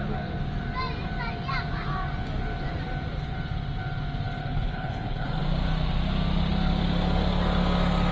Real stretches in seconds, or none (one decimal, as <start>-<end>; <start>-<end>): 0.0-4.4; 5.4-8.1